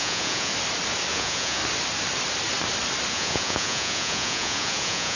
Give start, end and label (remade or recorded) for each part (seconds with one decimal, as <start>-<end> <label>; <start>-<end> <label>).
0.0-0.5 remade; 0.5-1.1 recorded; 1.1-1.6 remade; 1.6-3.1 recorded; 3.1-5.2 remade